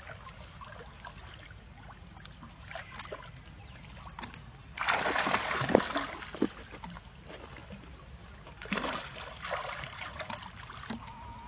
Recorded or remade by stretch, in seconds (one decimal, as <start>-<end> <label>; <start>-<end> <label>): 0.0-11.5 recorded